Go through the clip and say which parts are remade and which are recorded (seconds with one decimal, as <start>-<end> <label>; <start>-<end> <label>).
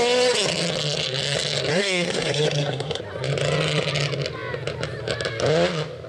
0.0-1.7 recorded; 1.7-3.0 remade; 3.0-6.1 recorded